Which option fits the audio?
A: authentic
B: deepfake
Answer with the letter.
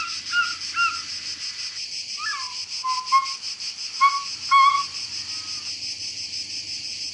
A